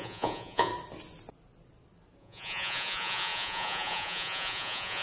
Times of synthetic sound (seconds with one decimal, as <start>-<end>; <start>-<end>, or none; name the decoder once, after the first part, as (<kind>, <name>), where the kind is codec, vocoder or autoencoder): 0.0-0.7 (vocoder, Vocos); 2.2-5.0